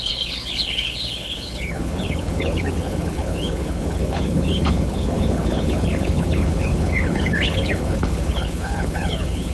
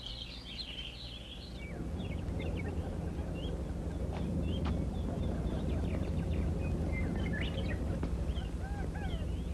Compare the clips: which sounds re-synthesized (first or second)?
first